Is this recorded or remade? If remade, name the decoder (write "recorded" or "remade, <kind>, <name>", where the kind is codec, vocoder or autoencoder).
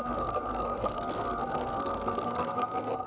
remade, codec, SNAC